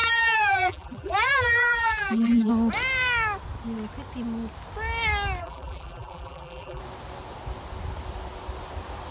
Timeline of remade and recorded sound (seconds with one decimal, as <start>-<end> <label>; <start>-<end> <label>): 0.0-2.5 remade; 2.5-5.4 recorded; 5.4-6.8 remade; 6.8-9.1 recorded